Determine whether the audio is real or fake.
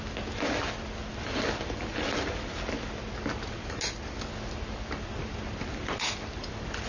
real